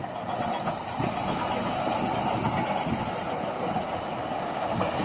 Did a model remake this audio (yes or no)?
no